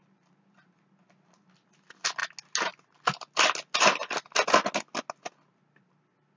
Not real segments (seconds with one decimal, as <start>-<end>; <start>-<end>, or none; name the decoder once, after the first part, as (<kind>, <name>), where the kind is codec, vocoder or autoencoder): none